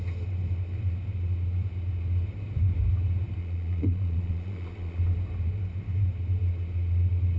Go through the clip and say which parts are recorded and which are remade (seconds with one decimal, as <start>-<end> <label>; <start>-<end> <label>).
0.0-3.4 recorded; 3.4-5.0 remade; 5.0-7.4 recorded